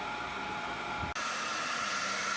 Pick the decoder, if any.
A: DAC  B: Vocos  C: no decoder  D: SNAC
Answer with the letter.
C